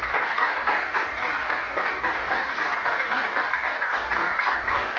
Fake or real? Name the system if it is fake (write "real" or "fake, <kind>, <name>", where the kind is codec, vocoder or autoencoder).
fake, codec, DAC